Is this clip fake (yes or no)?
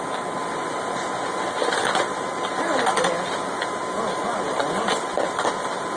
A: no